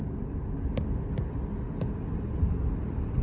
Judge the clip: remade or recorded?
recorded